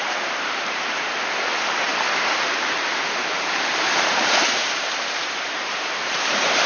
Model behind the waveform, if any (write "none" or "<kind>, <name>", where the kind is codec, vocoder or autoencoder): vocoder, BigVGAN v2